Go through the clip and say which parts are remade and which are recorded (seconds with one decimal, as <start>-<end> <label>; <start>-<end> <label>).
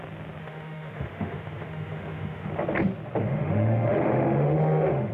0.0-0.4 recorded; 0.4-2.5 remade; 2.5-3.2 recorded; 3.2-5.1 remade